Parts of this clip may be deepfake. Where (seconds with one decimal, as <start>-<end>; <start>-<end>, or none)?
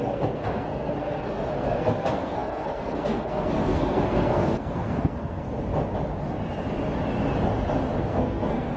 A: 0.0-5.7; 8.0-8.8